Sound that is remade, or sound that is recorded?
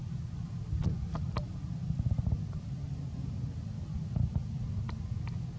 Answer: recorded